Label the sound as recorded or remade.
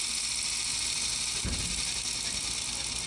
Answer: recorded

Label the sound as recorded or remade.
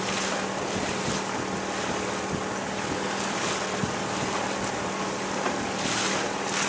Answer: recorded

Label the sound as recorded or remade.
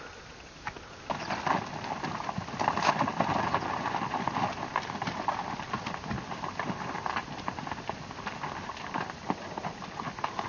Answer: recorded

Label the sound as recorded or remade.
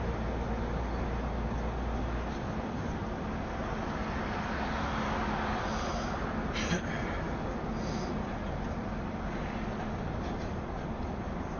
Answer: recorded